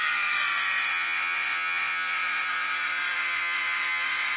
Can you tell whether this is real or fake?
fake